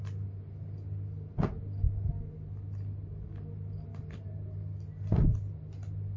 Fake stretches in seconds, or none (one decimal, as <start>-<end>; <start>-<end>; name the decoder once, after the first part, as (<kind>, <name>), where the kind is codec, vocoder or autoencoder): none